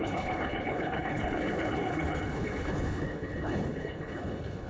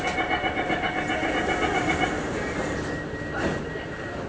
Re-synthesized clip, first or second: first